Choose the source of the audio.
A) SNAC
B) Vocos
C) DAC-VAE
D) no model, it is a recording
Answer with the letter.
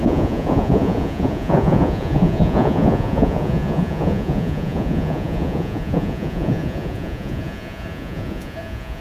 B